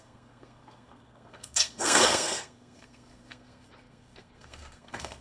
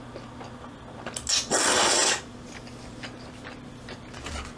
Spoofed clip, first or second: first